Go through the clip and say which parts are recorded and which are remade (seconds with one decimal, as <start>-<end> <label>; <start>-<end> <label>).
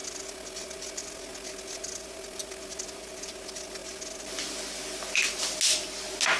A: 0.0-6.4 recorded